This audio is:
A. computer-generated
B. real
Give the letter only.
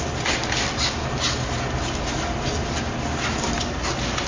B